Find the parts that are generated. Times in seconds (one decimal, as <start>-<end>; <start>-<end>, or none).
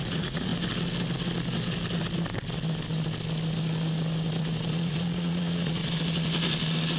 0.0-0.5; 4.7-5.8